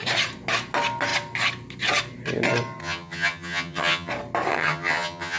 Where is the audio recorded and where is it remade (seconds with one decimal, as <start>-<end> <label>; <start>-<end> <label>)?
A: 0.0-2.8 recorded; 2.8-4.1 remade; 4.1-4.5 recorded; 4.5-5.4 remade